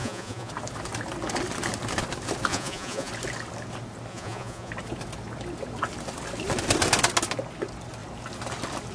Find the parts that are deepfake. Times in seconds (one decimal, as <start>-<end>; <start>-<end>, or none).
0.0-0.5; 2.5-3.1; 4.1-4.7